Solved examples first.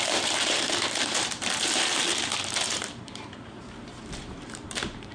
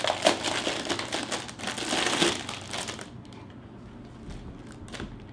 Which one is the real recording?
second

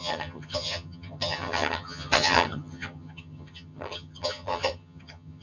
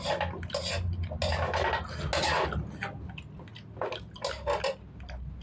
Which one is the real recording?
second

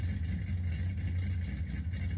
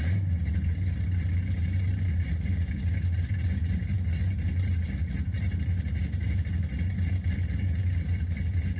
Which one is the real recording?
first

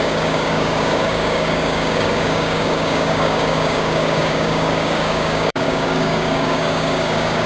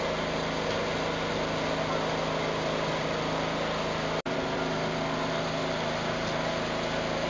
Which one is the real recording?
second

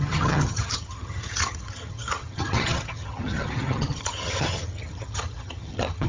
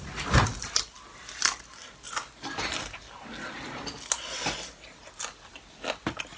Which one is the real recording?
second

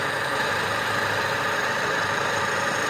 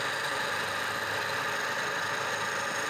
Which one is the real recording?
second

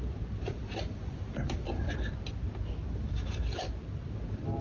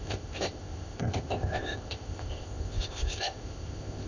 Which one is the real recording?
first